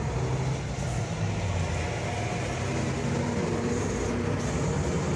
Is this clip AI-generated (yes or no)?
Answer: no